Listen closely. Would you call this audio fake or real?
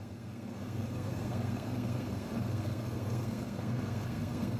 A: fake